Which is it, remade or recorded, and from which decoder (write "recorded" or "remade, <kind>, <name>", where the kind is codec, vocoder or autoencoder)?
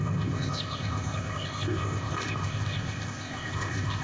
remade, codec, ZipCodec